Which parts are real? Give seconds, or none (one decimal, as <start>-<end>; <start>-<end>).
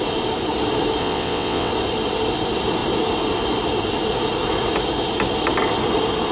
0.0-1.0; 1.7-6.3